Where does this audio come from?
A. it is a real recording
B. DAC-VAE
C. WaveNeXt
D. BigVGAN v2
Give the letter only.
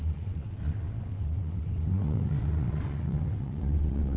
C